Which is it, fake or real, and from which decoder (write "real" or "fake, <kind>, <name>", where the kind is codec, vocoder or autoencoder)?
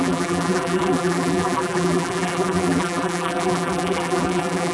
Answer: fake, vocoder, BigVGAN v2